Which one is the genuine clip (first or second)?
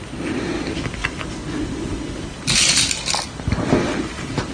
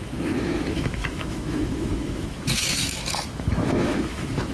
first